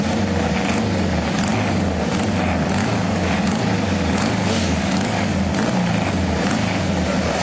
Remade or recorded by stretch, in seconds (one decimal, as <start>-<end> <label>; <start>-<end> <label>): 0.0-2.8 recorded; 2.8-5.4 remade; 5.4-7.4 recorded